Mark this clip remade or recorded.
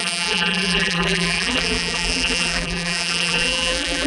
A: remade